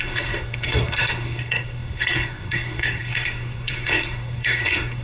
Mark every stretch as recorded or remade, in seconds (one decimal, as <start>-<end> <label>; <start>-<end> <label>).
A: 0.0-5.0 remade